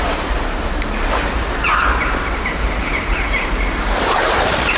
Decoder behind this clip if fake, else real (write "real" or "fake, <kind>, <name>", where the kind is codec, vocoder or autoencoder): fake, vocoder, BigVGAN v2